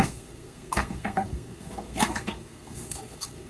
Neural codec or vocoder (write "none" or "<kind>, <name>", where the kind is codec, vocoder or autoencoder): codec, SNAC